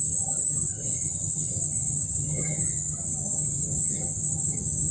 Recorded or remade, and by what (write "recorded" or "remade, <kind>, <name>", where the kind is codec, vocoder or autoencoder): remade, vocoder, HiFi-GAN